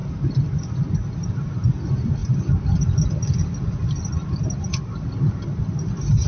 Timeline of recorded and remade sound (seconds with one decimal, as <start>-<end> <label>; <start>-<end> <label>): 0.0-6.3 recorded

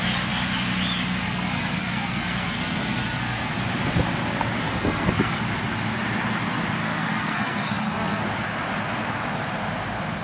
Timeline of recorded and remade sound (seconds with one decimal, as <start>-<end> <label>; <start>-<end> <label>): 0.0-1.2 recorded; 1.2-3.5 remade; 3.5-4.6 recorded; 4.6-5.4 remade; 5.4-6.8 recorded; 6.8-8.2 remade; 8.2-10.2 recorded